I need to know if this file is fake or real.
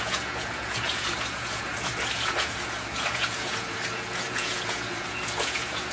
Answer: fake